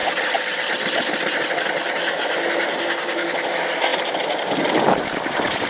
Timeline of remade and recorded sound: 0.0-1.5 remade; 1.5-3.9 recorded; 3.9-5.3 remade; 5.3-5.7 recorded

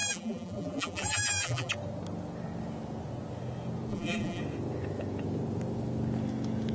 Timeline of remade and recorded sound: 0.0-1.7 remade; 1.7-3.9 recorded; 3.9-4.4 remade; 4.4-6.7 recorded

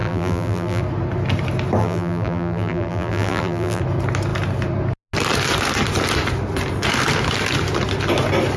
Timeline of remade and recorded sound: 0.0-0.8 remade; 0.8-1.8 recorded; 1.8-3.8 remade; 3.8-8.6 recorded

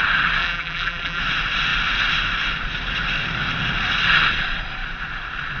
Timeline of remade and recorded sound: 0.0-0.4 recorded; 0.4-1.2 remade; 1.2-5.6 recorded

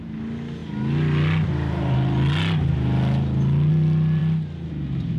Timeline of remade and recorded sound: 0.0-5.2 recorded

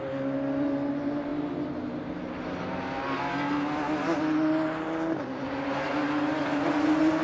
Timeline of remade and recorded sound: 0.0-7.2 recorded